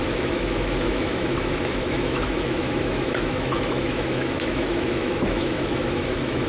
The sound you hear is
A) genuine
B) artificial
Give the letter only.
B